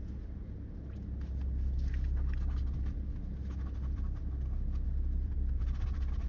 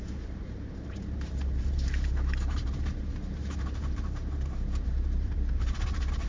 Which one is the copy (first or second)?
second